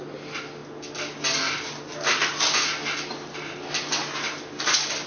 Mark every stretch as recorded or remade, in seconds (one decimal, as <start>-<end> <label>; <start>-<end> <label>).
0.0-5.1 recorded